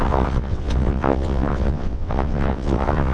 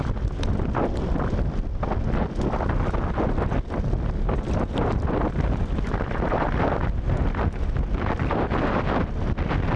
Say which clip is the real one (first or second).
second